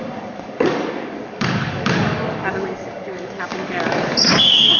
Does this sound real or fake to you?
fake